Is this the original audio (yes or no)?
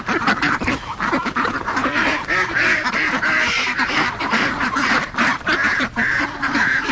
no